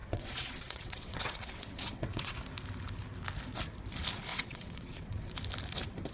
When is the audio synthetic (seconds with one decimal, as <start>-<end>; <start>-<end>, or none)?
0.0-2.3; 4.3-5.3